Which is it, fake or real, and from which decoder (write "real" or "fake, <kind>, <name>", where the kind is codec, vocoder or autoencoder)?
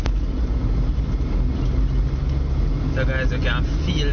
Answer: real